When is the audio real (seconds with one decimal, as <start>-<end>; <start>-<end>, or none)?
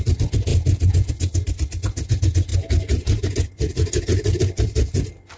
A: 0.0-5.4